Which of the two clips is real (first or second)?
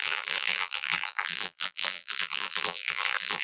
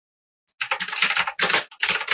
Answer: second